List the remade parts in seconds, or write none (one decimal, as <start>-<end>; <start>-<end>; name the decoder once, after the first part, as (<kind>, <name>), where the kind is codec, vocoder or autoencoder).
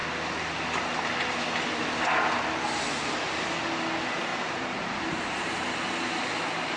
4.3-5.6 (vocoder, BigVGAN v2)